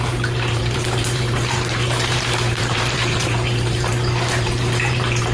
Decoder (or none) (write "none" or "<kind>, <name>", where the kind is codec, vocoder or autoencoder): vocoder, BigVGAN v2